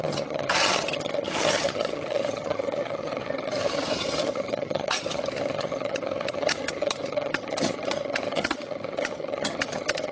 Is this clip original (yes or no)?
no